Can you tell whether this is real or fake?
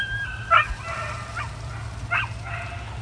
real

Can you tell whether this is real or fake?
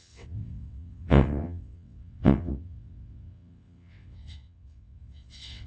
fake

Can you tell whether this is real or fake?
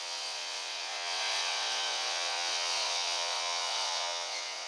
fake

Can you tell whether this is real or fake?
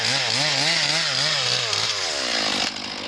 real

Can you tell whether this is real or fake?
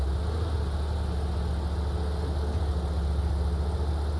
real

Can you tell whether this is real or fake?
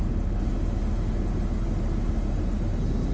real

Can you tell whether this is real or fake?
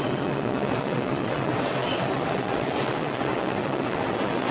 fake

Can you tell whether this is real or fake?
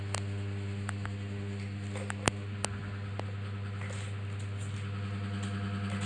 real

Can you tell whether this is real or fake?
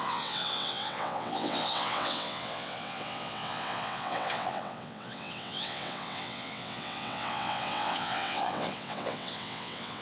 fake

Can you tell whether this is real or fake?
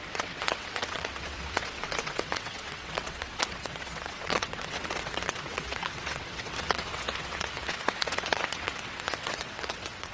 fake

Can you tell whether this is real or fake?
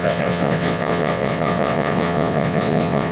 fake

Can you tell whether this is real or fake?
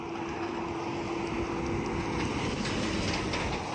real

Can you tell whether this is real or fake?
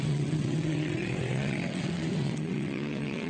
fake